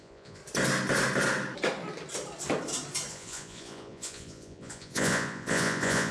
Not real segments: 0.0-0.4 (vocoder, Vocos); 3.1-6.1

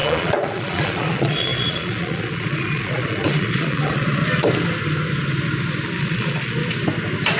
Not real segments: 0.0-4.2 (vocoder, Vocos); 6.0-6.6